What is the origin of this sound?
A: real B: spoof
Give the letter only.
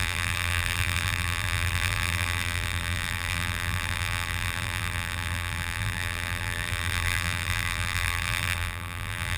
B